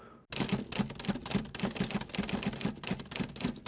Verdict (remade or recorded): recorded